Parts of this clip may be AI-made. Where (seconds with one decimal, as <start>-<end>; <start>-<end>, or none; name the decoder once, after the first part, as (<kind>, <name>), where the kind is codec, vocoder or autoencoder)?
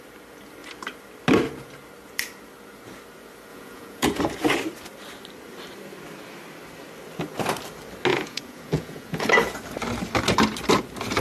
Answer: 3.5-4.2 (vocoder, Vocos); 8.1-9.3